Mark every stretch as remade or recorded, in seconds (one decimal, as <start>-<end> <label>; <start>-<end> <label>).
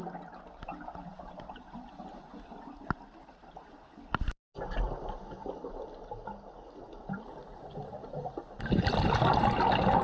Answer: 0.0-1.1 recorded; 1.1-2.3 remade; 2.3-10.0 recorded